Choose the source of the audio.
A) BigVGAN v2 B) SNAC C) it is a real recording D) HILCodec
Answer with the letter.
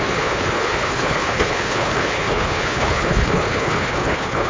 D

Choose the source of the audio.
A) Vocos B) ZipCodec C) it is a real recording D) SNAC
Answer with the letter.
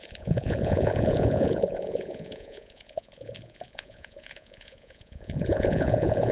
A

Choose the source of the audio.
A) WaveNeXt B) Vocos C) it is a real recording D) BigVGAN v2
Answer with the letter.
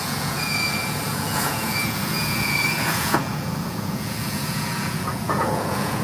B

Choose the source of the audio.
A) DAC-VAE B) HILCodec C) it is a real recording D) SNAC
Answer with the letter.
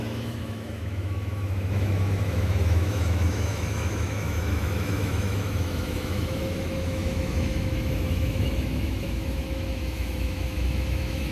A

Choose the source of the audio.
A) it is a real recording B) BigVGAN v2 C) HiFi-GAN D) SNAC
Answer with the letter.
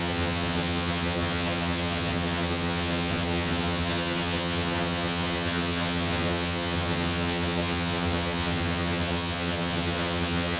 C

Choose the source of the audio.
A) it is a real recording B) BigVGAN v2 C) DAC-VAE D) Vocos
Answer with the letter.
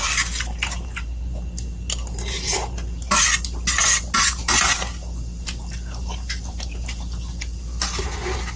A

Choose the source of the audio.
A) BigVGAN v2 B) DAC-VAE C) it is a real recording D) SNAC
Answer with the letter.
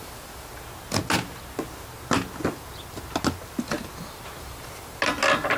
C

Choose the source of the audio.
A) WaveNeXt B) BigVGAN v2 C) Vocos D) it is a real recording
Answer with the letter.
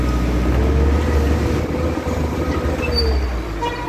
D